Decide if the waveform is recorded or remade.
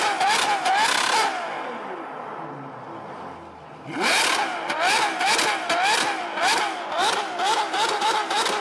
recorded